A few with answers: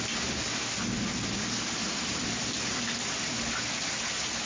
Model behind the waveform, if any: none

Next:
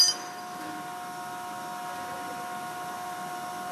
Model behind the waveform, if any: none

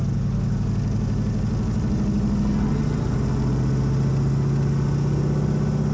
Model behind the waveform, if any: none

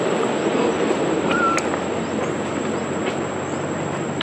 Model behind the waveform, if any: none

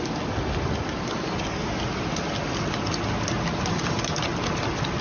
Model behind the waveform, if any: none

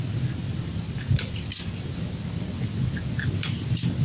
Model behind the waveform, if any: none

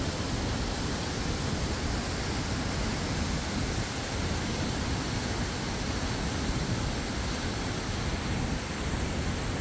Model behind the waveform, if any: none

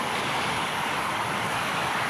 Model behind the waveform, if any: codec, DAC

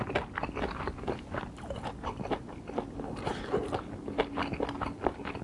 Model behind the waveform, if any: none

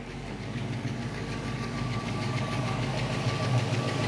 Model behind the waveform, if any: codec, DAC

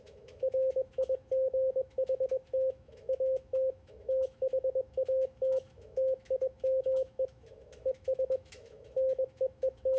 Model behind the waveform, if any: autoencoder, DAC-VAE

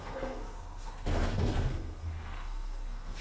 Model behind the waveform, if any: codec, SNAC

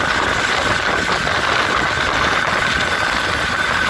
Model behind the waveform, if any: none